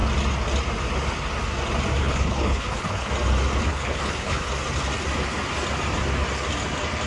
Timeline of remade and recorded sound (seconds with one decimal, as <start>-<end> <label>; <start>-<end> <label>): 0.0-2.0 recorded; 2.0-3.1 remade; 3.1-3.7 recorded; 3.7-4.5 remade; 4.5-7.1 recorded